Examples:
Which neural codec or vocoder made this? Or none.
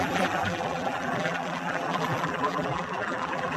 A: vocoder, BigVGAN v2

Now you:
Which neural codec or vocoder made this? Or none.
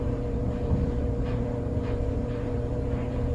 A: vocoder, BigVGAN v2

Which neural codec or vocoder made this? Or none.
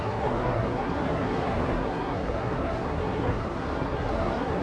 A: codec, SNAC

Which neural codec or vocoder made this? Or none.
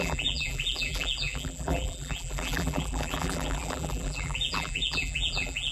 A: vocoder, BigVGAN v2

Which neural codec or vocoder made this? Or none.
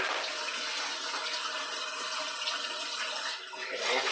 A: none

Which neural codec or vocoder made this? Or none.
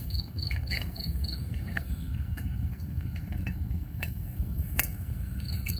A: codec, SNAC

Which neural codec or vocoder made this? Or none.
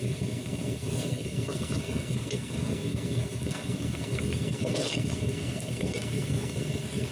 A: codec, SNAC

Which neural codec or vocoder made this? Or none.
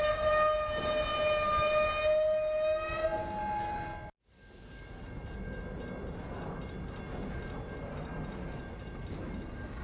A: none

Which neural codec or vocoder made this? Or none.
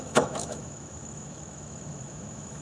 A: autoencoder, DAC-VAE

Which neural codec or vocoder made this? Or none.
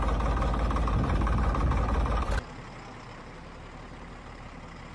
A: none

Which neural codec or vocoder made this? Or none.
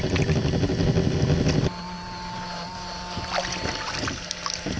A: none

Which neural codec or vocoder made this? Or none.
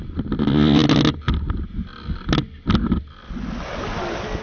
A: none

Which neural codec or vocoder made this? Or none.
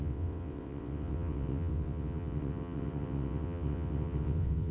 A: vocoder, WaveNeXt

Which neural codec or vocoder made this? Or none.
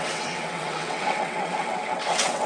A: vocoder, WaveNeXt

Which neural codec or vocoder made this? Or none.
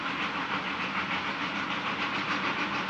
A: none